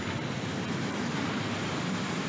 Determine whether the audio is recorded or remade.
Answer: remade